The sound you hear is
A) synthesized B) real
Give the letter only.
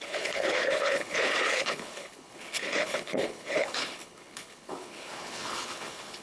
A